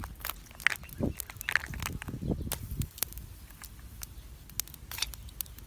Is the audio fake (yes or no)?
no